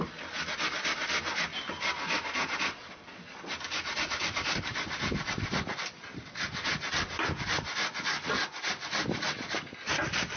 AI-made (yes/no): no